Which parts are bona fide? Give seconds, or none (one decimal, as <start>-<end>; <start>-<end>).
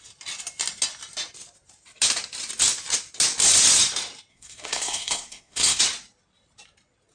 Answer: 0.0-4.3; 5.8-7.1